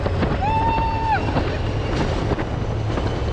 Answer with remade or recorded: recorded